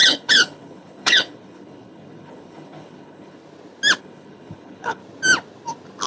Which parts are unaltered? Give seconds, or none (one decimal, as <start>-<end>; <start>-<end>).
3.4-4.0; 5.0-6.1